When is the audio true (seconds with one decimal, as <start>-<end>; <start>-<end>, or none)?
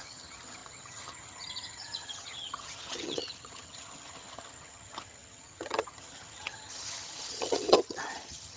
none